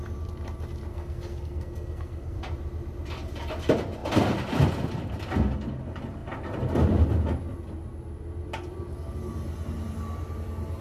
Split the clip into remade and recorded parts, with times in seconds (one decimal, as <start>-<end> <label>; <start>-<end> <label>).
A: 0.0-0.9 recorded; 0.9-2.4 remade; 2.4-10.8 recorded